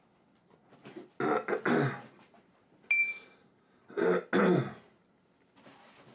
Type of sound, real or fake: real